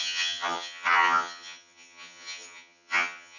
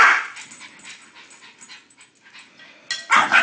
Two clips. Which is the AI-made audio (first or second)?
first